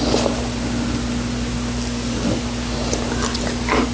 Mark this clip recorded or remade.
recorded